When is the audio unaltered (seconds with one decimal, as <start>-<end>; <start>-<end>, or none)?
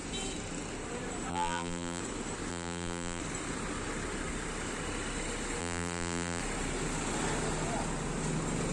0.0-1.3; 2.0-2.5; 3.2-5.6; 6.4-8.7